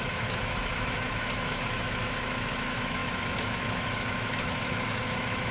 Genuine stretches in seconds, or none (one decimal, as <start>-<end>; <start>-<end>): none